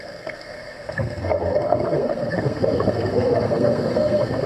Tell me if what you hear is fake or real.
fake